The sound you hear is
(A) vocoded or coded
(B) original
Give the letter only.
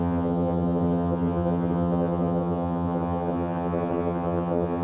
A